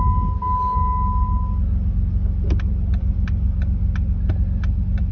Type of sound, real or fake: real